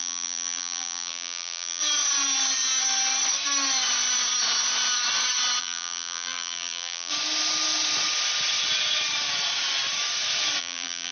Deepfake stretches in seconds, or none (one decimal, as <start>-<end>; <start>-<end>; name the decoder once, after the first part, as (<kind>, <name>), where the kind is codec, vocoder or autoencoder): 0.0-1.8 (vocoder, BigVGAN v2); 5.6-7.1; 10.6-11.1